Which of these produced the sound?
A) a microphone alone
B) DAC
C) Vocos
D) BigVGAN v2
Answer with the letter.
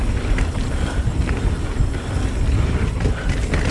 A